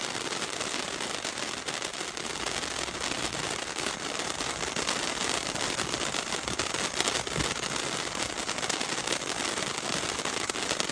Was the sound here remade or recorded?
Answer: recorded